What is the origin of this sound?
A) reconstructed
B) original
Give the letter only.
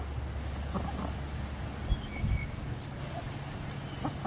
B